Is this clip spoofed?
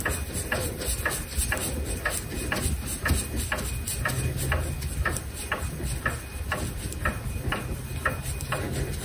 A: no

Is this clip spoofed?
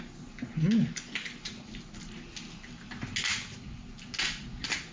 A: no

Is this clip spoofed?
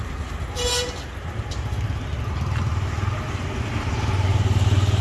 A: no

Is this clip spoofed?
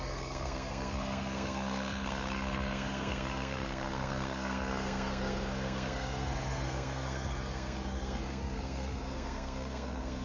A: yes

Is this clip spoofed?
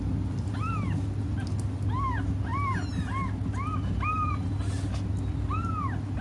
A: no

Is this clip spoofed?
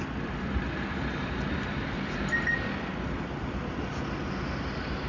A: no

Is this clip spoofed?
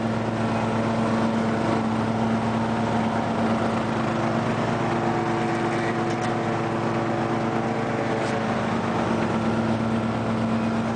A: no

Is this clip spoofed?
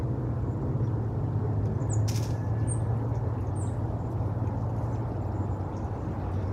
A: no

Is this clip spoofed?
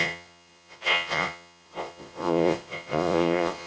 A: yes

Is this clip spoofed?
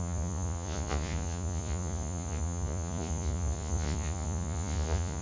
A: yes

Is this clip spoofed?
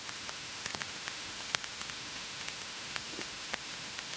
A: yes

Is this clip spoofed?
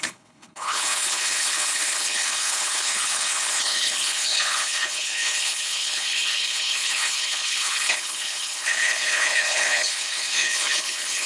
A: yes